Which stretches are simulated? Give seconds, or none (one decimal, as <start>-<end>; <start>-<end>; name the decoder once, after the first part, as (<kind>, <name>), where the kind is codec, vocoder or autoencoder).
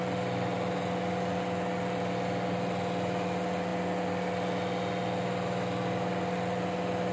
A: none